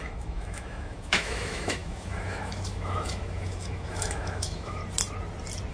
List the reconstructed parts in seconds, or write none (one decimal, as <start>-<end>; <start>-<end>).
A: 0.0-4.8